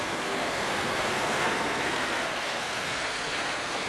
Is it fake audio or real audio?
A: fake